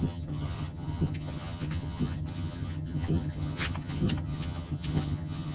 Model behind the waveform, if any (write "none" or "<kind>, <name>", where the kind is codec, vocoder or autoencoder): vocoder, HiFi-GAN